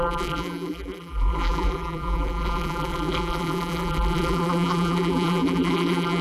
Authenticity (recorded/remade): remade